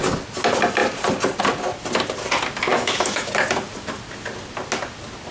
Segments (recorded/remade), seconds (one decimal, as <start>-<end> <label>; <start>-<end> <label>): 0.0-2.7 recorded; 2.7-3.3 remade; 3.3-5.3 recorded